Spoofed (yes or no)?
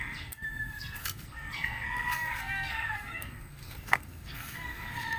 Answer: yes